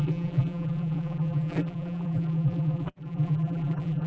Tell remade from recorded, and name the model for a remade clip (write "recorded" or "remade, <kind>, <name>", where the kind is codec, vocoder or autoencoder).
remade, vocoder, BigVGAN v2